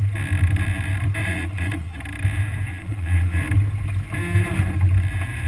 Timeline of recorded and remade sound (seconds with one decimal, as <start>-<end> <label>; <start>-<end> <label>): 0.0-1.2 recorded; 1.2-2.0 remade; 2.0-2.7 recorded; 2.7-3.4 remade; 3.4-5.5 recorded